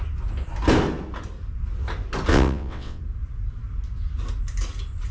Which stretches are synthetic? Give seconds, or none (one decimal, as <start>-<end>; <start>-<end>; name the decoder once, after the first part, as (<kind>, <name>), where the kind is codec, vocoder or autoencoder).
2.3-3.0 (vocoder, WaveNeXt)